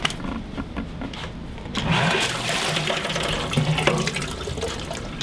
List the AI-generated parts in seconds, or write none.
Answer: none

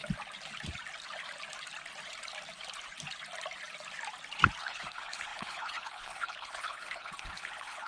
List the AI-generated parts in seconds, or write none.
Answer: 4.6-7.9 (codec, HILCodec)

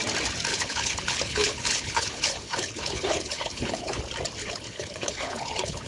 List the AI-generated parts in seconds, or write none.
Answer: 0.5-4.0 (codec, HILCodec); 4.4-5.9